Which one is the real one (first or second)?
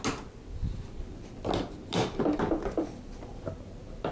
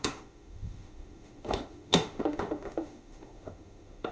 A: first